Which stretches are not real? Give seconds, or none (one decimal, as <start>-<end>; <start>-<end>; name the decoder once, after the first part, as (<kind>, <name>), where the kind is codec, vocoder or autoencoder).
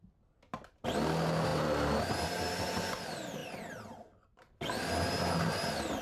none